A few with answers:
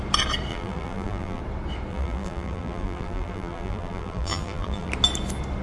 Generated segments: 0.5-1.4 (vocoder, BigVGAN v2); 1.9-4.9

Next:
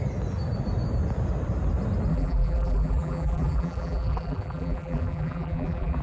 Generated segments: 2.1-6.0 (vocoder, BigVGAN v2)

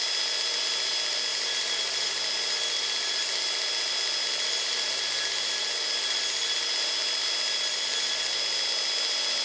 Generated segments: 1.3-2.1 (vocoder, BigVGAN v2)

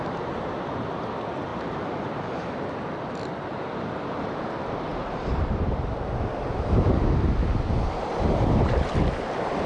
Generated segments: 1.5-2.6 (vocoder, BigVGAN v2); 4.9-5.8

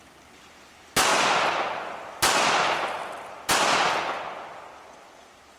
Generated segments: none